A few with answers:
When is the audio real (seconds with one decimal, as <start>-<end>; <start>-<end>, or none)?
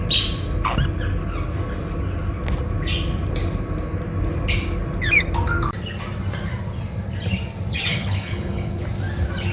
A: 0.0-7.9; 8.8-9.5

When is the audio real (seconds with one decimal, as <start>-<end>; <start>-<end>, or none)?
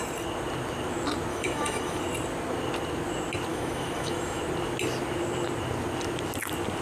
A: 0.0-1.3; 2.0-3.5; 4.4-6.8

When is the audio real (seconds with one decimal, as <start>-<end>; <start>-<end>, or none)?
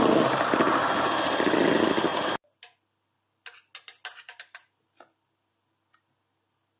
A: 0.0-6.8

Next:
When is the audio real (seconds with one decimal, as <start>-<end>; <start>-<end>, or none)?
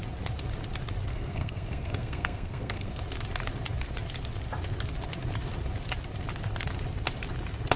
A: 0.0-1.1; 3.0-7.8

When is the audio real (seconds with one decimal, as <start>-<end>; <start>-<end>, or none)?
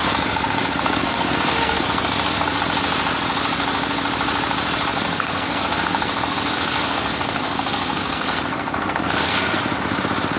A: 2.6-4.9; 9.6-10.4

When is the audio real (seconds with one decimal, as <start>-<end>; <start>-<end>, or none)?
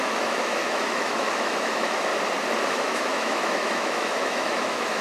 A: 2.1-2.7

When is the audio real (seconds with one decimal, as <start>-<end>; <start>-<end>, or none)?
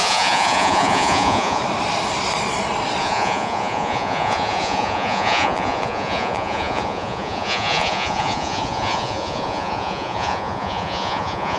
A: 1.6-3.0